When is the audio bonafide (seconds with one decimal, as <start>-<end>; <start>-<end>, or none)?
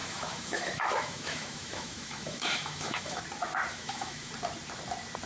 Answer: 3.2-3.7; 4.3-5.3